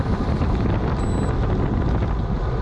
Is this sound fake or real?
real